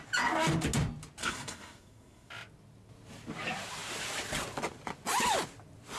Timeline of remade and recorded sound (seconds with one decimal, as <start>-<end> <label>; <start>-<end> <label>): 0.0-1.2 recorded; 1.2-2.3 remade; 2.3-6.0 recorded